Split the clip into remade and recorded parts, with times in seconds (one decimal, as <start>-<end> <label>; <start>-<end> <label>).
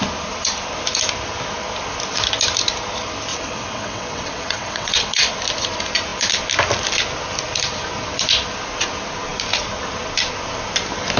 0.0-3.3 recorded; 3.3-5.3 remade; 5.3-11.2 recorded